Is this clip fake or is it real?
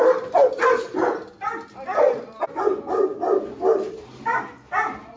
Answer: real